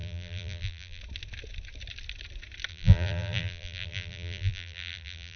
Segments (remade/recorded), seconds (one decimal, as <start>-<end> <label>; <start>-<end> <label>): 0.0-1.0 remade; 1.0-2.7 recorded; 2.7-5.4 remade